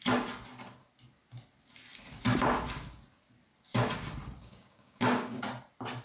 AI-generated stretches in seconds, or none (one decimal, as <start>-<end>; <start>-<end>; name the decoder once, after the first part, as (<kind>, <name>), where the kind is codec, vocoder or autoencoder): 4.4-5.4 (codec, DAC)